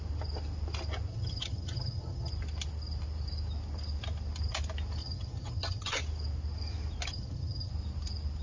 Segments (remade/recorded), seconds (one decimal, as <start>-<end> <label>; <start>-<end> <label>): 0.0-1.1 recorded; 1.1-2.3 remade; 2.3-5.0 recorded; 5.0-6.0 remade; 6.0-7.1 recorded; 7.1-7.7 remade; 7.7-8.4 recorded

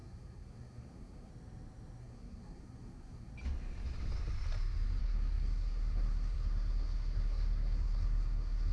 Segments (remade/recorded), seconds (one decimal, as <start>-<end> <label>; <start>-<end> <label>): 0.0-1.3 remade; 1.3-2.0 recorded; 2.0-3.3 remade; 3.3-5.0 recorded; 5.0-8.7 remade